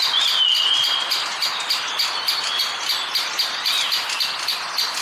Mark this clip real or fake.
real